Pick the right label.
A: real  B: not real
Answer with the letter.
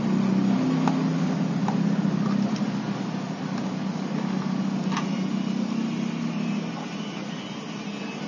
A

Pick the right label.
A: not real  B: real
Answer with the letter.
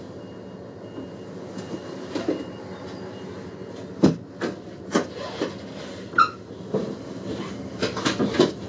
B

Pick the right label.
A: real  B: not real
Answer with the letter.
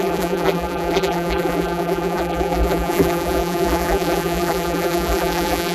B